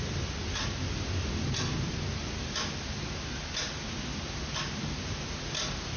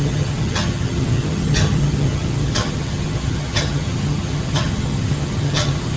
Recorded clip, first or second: first